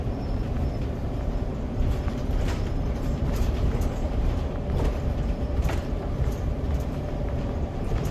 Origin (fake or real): fake